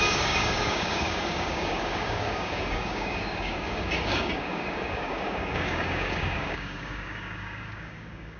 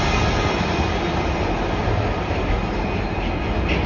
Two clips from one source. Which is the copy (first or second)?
first